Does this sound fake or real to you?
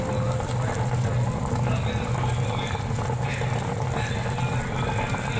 real